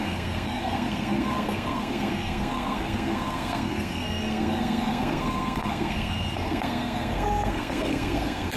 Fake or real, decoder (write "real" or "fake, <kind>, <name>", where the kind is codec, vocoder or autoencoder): fake, codec, SNAC